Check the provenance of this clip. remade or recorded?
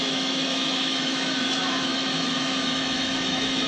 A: remade